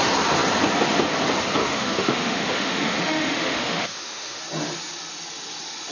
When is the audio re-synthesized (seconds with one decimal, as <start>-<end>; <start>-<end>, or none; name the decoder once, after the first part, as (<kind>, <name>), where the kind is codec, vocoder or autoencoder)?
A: 1.6-4.4 (autoencoder, DAC-VAE)